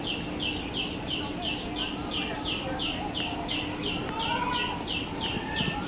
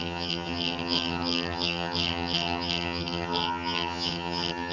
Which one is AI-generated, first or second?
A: second